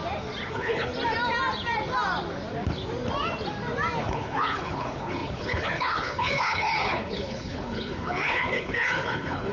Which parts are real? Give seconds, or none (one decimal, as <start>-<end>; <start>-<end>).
0.0-0.5; 0.9-4.0